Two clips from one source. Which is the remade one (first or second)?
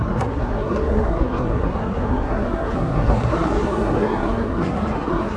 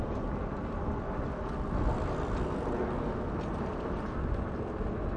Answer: first